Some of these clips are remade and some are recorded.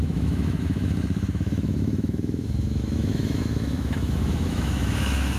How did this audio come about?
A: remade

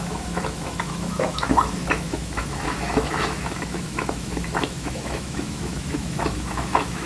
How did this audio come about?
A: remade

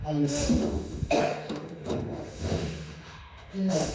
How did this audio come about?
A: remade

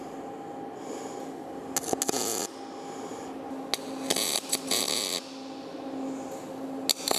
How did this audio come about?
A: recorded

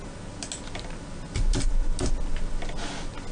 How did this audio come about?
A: recorded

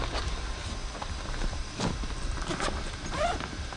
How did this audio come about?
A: recorded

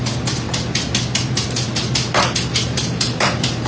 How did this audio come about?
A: recorded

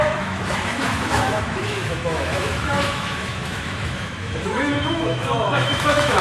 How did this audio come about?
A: remade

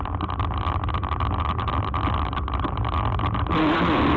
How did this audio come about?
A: recorded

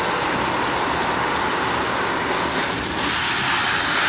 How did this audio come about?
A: recorded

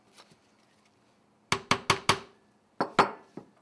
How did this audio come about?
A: recorded